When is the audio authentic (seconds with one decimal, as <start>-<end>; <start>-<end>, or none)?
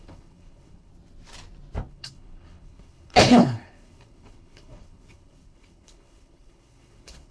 0.9-1.9